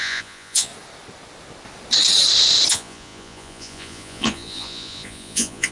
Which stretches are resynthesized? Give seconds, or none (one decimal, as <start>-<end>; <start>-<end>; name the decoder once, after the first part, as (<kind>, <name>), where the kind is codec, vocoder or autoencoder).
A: 0.0-0.7 (vocoder, Vocos); 2.7-5.7